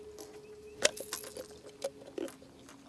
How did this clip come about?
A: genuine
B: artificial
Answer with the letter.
A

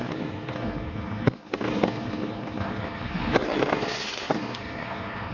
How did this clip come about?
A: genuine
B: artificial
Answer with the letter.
B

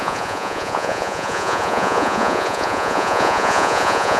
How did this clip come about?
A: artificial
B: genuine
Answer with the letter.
A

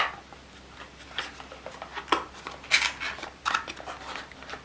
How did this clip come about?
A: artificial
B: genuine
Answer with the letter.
B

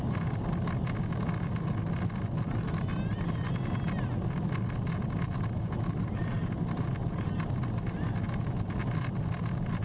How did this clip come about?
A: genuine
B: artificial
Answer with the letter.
A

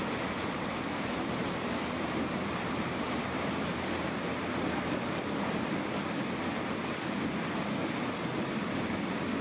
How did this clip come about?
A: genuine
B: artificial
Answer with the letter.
B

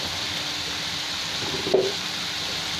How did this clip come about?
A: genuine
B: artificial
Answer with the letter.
B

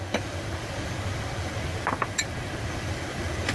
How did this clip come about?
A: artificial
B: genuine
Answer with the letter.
B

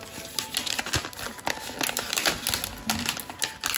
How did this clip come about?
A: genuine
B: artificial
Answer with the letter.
A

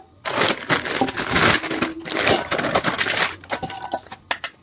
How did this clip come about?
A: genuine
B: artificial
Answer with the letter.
A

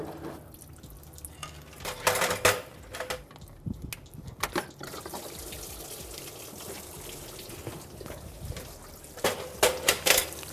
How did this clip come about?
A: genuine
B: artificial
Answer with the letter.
A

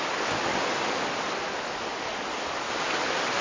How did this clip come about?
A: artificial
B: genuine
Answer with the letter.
B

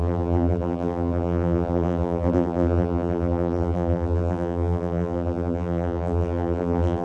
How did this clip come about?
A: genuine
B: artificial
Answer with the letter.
B